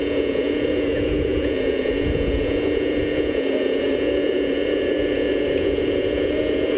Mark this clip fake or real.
fake